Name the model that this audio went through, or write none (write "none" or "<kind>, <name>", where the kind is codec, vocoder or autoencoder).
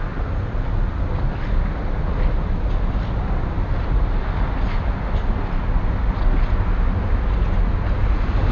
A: none